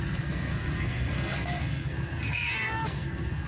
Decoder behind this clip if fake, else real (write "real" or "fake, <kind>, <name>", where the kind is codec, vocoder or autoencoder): fake, codec, SNAC